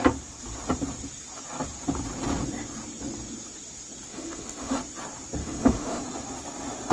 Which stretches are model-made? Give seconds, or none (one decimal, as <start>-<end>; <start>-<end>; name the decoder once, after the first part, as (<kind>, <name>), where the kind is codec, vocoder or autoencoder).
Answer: 4.1-4.8 (autoencoder, DAC-VAE); 5.4-6.0